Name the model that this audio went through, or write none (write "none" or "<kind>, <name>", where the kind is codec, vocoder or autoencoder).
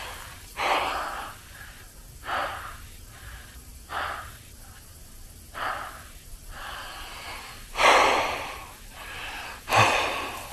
none